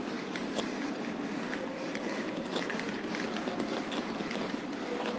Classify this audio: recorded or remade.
recorded